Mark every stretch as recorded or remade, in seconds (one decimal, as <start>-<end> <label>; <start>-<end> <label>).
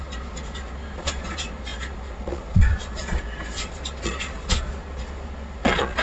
0.0-6.0 remade